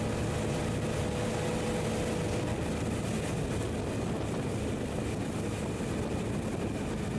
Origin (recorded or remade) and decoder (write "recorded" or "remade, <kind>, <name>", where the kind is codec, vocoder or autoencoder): recorded